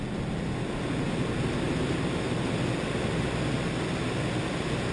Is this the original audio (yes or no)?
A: yes